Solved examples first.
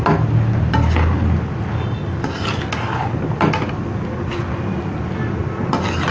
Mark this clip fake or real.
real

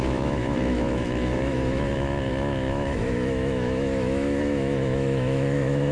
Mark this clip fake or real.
fake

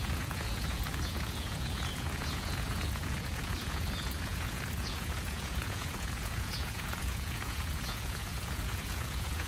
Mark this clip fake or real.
fake